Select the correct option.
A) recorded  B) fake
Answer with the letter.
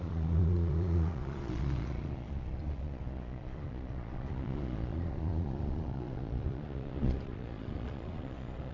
B